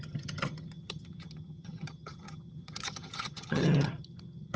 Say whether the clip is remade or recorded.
remade